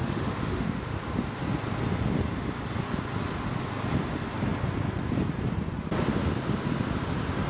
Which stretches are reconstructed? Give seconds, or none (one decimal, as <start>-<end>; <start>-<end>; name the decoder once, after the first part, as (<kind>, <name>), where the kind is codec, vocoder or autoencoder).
0.0-1.0 (autoencoder, DAC-VAE)